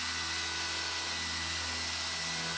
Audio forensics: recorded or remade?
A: recorded